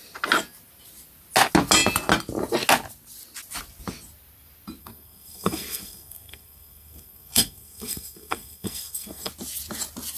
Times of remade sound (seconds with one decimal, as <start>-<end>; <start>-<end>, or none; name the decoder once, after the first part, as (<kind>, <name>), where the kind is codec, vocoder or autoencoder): 4.8-9.3 (codec, SNAC)